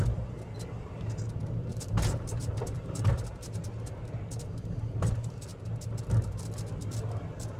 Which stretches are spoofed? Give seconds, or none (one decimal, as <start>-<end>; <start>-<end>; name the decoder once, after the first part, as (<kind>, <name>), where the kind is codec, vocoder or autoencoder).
1.7-3.1 (vocoder, BigVGAN v2)